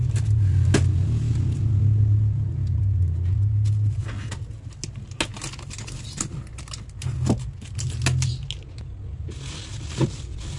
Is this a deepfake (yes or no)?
no